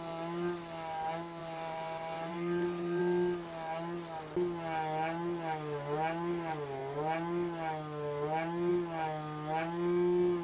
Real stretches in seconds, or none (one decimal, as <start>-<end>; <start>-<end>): 0.0-1.4; 3.0-10.4